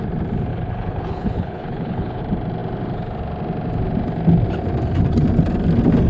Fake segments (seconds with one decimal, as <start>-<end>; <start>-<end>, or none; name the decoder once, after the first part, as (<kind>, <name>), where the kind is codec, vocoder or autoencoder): 0.5-2.2 (codec, HILCodec)